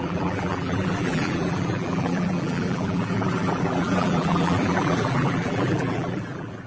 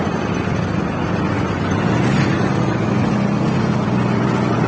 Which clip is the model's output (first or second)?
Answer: first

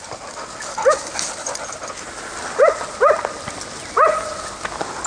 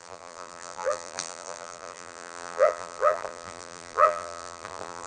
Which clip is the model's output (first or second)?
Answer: second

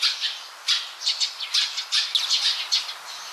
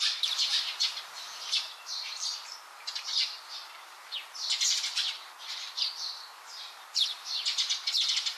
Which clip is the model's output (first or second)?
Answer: second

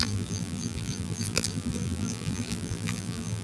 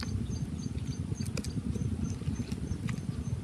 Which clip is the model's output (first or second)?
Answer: first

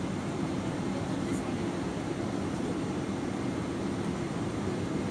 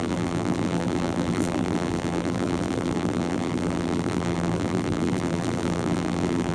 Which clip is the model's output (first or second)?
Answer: second